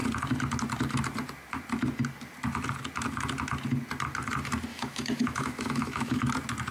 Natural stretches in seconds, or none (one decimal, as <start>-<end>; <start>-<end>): 0.0-4.7; 6.2-6.7